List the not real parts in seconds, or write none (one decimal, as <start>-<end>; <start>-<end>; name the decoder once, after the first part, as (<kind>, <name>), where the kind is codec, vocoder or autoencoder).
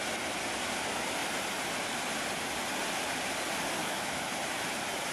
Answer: 3.8-4.3 (autoencoder, DAC-VAE)